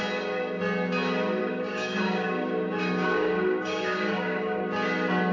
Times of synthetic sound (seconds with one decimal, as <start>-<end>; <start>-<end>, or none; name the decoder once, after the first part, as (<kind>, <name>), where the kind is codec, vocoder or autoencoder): 1.4-4.6 (codec, DAC)